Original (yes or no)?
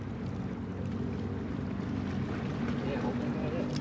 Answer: yes